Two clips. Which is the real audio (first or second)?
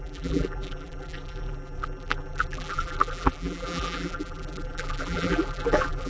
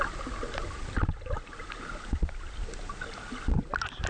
second